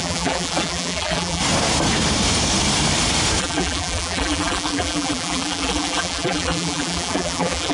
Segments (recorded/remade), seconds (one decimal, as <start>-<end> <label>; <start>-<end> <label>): 0.0-1.4 remade; 1.4-3.4 recorded; 3.4-7.7 remade